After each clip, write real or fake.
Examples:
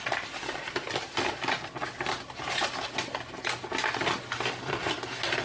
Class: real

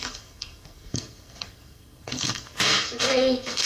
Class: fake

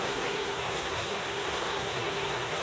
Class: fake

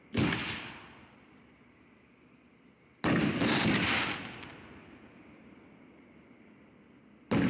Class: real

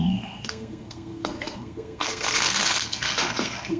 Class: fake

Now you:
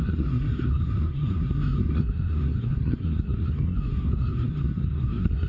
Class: fake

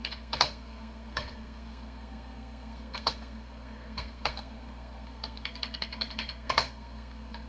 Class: fake